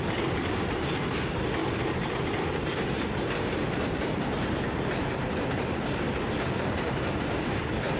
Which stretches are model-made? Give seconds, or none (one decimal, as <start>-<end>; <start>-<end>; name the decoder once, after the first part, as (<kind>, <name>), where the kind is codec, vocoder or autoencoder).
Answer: none